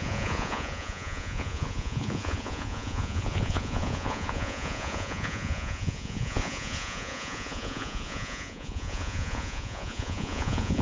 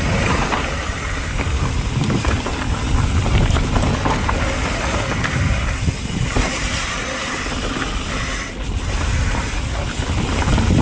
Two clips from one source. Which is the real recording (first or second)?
second